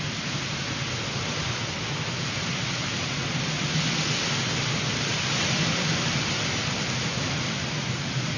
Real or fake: real